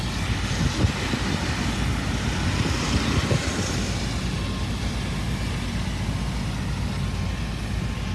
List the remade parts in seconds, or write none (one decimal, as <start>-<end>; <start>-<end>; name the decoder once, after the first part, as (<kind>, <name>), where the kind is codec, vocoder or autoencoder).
1.9-3.3 (vocoder, BigVGAN v2)